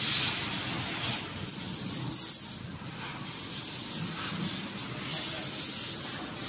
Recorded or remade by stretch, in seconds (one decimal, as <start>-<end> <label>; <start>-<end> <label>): 0.0-6.5 recorded